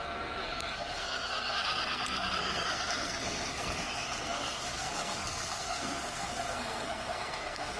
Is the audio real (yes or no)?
no